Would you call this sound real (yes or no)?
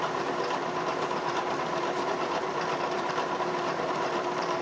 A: no